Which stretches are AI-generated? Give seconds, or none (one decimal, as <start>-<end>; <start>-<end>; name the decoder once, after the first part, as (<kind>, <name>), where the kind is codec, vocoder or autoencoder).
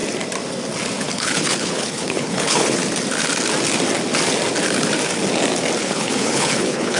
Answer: 1.0-2.8 (codec, HILCodec); 5.8-7.0